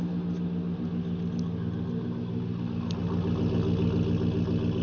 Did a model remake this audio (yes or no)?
no